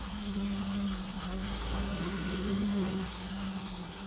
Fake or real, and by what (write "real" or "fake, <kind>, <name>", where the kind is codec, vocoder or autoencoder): fake, codec, SNAC